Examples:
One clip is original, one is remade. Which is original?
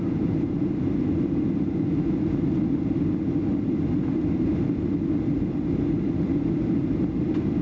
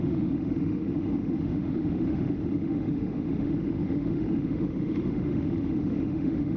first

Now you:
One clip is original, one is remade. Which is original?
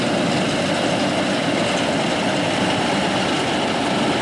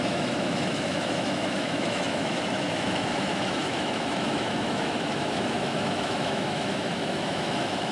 first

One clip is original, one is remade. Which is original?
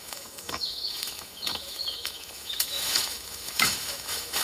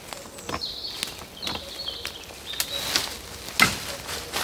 second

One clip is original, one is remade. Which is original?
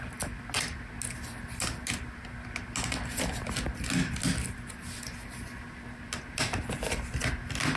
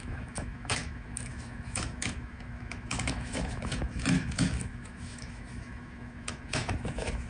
first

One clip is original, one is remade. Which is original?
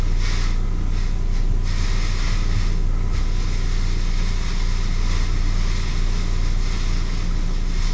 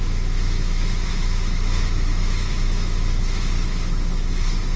first